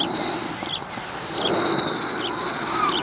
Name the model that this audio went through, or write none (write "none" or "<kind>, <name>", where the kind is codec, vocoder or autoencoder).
none